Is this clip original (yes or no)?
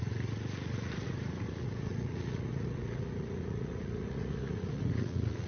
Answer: no